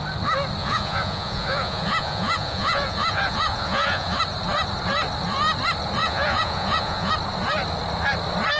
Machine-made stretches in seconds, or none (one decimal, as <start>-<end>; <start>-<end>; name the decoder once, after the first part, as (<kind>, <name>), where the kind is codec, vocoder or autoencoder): 0.6-4.2 (vocoder, Vocos); 6.0-7.1